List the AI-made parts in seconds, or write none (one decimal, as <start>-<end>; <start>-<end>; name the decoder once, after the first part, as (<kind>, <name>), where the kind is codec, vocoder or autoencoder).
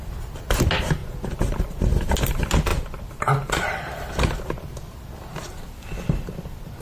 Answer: none